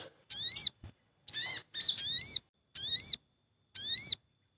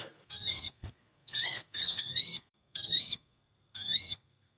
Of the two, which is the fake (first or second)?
second